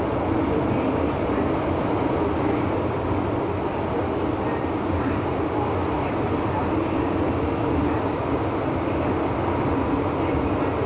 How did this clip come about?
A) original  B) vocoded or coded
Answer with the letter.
A